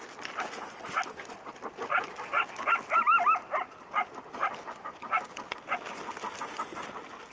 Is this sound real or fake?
real